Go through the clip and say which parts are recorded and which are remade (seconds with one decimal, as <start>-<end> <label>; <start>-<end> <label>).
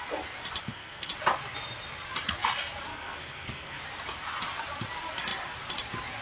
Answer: 0.0-0.6 recorded; 0.6-1.1 remade; 1.1-2.9 recorded; 2.9-3.8 remade; 3.8-6.2 recorded